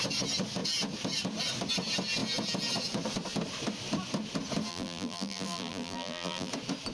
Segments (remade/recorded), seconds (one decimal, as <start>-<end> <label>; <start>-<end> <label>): 0.0-4.7 recorded; 4.7-6.5 remade; 6.5-6.9 recorded